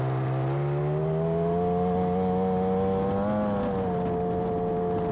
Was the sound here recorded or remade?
recorded